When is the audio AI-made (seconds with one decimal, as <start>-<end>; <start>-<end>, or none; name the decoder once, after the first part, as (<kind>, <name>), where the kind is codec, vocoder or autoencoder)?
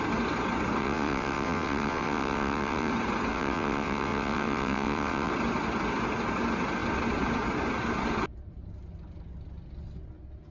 0.8-2.9 (vocoder, WaveNeXt); 3.3-5.3